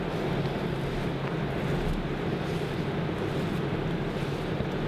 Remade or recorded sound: recorded